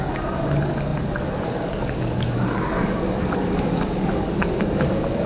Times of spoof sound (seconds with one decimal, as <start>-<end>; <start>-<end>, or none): 0.0-5.3